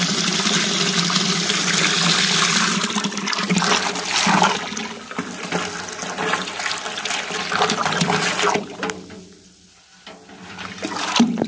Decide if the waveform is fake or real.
real